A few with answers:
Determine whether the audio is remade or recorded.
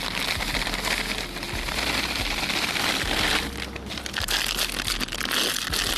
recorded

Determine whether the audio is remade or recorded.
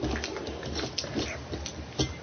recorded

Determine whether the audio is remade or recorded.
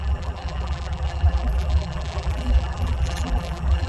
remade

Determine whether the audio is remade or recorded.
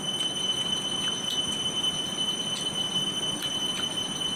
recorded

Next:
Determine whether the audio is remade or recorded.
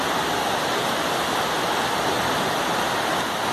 recorded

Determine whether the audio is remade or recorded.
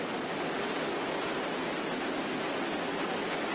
recorded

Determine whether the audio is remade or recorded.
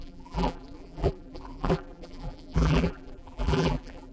remade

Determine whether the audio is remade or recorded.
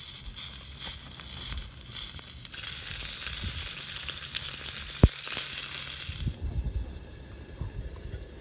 recorded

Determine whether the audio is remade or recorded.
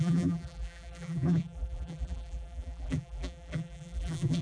remade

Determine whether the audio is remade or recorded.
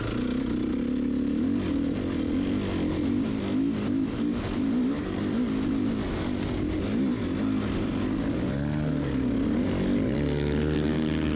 recorded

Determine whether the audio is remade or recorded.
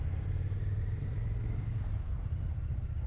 remade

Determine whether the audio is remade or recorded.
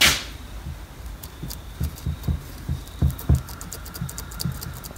recorded